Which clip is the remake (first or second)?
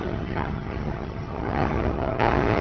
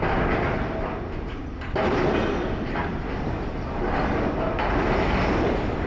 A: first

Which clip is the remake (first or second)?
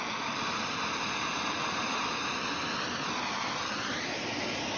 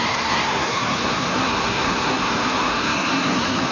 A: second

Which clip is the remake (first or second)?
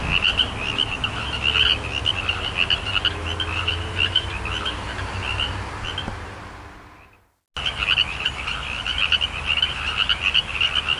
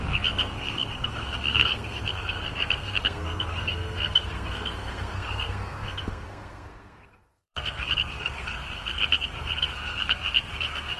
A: second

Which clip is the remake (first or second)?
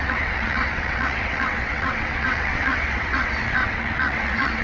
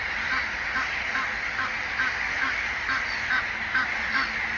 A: first